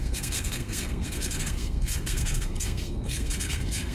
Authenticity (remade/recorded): remade